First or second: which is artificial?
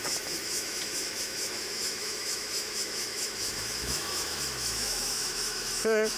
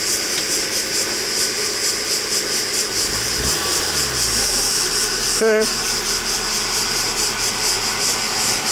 first